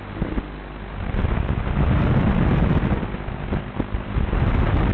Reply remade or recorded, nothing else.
recorded